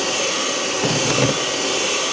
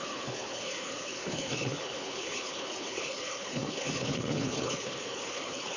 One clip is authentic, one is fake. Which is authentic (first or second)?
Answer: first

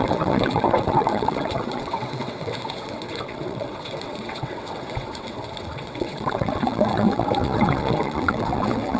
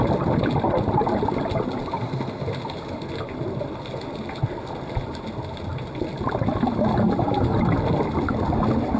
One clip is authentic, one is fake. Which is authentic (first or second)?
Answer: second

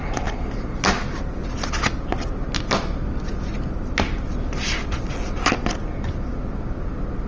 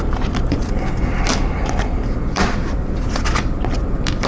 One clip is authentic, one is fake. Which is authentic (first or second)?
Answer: first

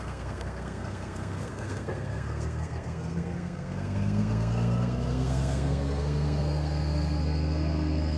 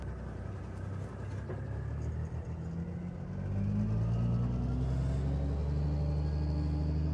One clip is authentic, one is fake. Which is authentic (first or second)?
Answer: second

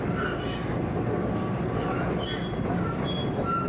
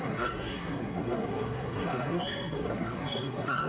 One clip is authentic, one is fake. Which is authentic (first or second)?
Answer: first